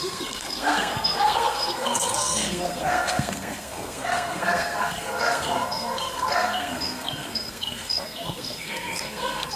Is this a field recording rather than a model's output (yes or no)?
no